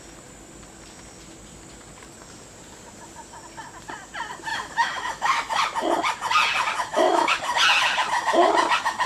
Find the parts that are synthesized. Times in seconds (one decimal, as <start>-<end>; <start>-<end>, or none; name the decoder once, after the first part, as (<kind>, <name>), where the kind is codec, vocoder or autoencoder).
4.5-5.6 (autoencoder, DAC-VAE); 6.9-7.4